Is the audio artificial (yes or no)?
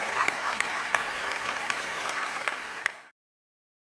yes